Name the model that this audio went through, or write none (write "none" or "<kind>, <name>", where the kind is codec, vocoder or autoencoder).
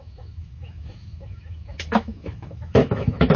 autoencoder, DAC-VAE